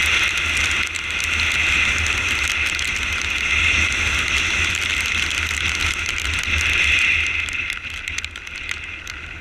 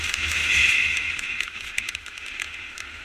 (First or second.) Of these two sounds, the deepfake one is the second